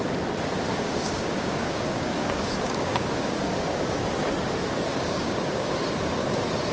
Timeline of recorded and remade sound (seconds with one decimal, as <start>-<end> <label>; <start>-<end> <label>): 0.0-0.7 recorded; 0.7-4.0 remade; 4.0-4.9 recorded; 4.9-5.7 remade; 5.7-6.7 recorded